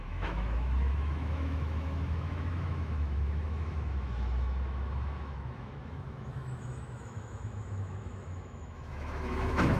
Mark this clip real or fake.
fake